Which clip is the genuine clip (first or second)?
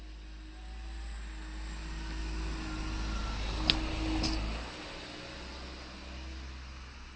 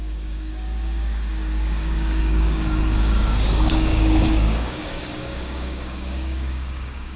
first